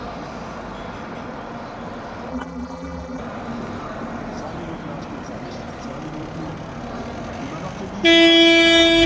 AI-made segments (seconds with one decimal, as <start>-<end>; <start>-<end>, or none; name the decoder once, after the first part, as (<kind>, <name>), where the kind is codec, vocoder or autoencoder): 2.3-3.2 (vocoder, BigVGAN v2)